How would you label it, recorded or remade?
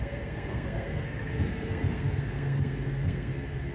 remade